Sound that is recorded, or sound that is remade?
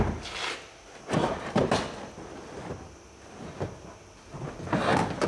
recorded